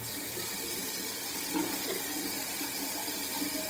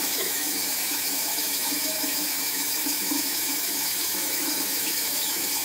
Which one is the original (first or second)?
first